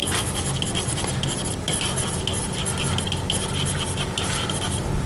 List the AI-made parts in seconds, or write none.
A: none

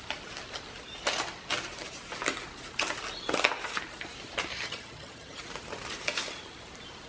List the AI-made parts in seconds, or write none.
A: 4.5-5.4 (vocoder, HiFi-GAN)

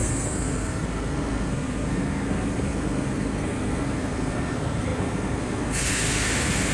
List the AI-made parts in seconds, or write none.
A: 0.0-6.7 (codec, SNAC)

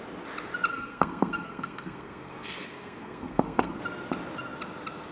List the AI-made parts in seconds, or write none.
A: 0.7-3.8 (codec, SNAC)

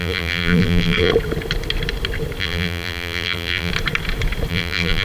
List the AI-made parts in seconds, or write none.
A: 0.0-1.1 (vocoder, BigVGAN v2); 2.4-3.7; 4.5-5.0

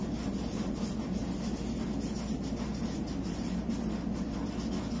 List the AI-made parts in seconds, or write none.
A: 0.0-1.2 (vocoder, BigVGAN v2); 2.7-3.7

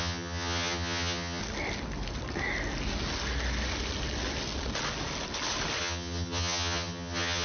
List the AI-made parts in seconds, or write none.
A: 0.0-1.4 (vocoder, HiFi-GAN); 5.8-7.4